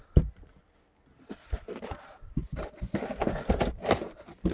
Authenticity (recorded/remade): recorded